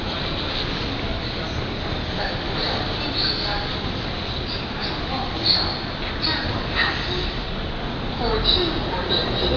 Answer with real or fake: real